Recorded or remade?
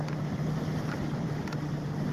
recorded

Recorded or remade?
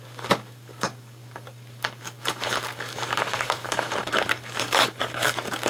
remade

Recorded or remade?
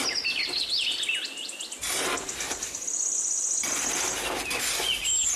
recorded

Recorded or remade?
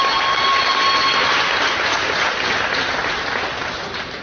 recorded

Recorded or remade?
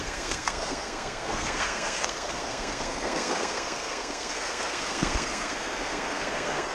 remade